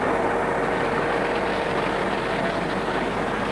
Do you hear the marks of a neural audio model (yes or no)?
no